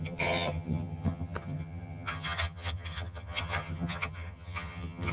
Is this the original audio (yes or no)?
no